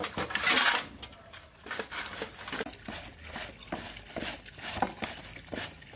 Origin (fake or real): real